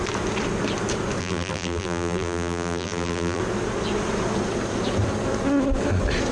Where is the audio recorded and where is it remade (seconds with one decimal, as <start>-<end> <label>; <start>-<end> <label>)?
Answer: 0.0-1.2 recorded; 1.2-3.4 remade; 3.4-6.3 recorded